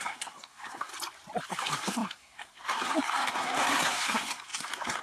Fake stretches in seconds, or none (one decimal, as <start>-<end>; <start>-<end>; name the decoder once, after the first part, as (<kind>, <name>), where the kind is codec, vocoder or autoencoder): 0.0-0.9 (codec, SNAC); 1.4-5.0

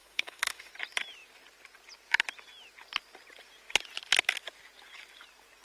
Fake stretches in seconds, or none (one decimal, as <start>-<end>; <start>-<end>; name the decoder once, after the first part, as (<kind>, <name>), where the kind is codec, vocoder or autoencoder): 0.0-0.7 (autoencoder, DAC-VAE)

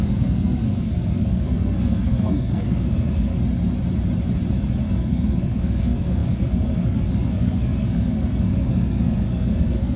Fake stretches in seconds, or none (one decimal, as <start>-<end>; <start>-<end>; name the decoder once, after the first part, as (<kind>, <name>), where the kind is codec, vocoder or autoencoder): 0.0-3.3 (codec, SNAC); 4.8-10.0

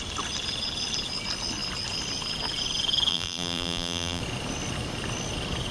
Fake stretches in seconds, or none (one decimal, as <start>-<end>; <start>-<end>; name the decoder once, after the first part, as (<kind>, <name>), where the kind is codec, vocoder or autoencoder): 3.1-4.2 (vocoder, BigVGAN v2)

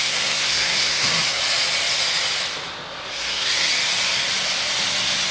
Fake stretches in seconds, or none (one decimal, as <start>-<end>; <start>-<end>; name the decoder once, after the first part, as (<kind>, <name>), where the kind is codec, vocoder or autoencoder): 0.0-1.4 (codec, SNAC); 3.1-3.7